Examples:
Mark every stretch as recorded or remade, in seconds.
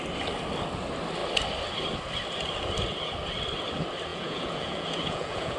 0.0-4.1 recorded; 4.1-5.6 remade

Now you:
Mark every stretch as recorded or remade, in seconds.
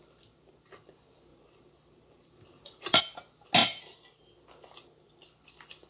0.0-1.3 recorded; 1.3-3.0 remade; 3.0-3.6 recorded; 3.6-4.2 remade; 4.2-5.9 recorded